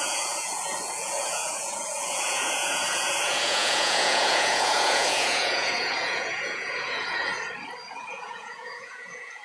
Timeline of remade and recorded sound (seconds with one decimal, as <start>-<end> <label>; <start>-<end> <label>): 0.0-7.3 remade; 7.3-7.9 recorded; 7.9-9.4 remade

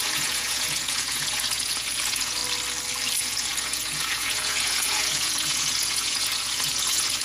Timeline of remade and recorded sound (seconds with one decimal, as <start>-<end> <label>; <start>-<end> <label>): 0.0-2.4 remade; 2.4-3.2 recorded; 3.2-7.2 remade

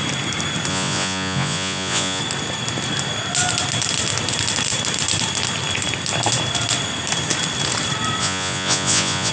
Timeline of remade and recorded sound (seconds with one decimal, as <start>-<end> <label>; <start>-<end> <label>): 0.0-0.7 recorded; 0.7-2.2 remade; 2.2-8.2 recorded; 8.2-9.3 remade

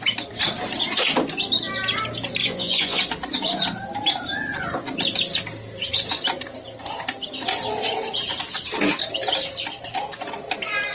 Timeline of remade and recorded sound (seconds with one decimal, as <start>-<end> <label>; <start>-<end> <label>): 0.0-2.4 recorded; 2.4-3.0 remade; 3.0-10.9 recorded

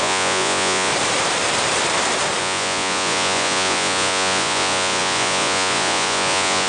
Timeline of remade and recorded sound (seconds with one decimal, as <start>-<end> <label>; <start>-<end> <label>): 0.0-0.9 remade; 0.9-2.4 recorded; 2.4-6.7 remade

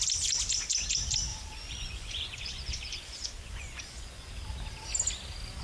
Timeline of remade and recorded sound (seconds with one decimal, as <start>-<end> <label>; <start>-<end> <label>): 0.0-1.3 recorded; 1.3-4.3 remade; 4.3-5.6 recorded